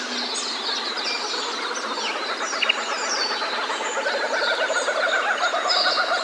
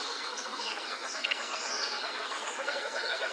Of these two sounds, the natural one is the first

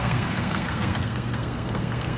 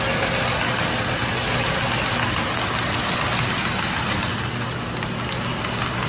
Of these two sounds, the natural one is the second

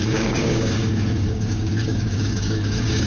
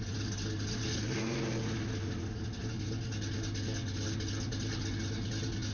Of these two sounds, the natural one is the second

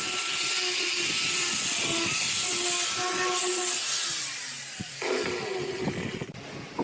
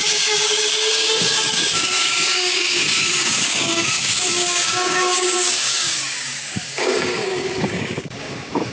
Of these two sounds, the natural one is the first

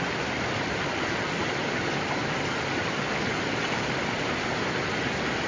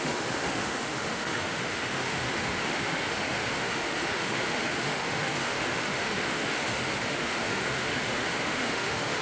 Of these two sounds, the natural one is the first